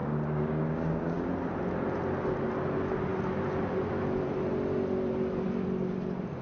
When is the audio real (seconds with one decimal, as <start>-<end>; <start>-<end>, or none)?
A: 1.3-6.4